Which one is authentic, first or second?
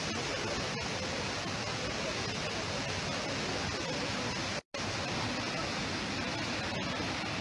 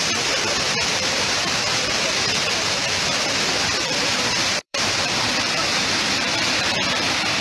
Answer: first